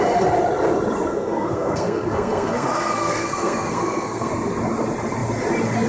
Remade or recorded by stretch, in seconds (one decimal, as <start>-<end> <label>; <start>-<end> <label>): 0.0-1.1 recorded; 1.1-4.3 remade; 4.3-5.9 recorded